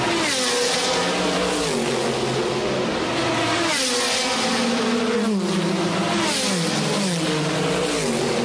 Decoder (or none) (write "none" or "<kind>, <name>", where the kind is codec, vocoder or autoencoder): none